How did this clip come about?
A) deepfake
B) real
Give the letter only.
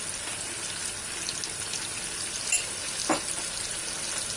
B